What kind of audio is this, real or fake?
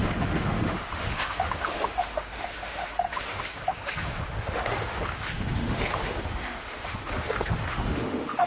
fake